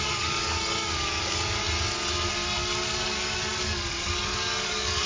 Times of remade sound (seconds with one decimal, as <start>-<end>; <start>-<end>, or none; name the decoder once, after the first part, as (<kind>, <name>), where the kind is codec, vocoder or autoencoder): 0.0-1.6 (codec, DAC); 3.0-5.1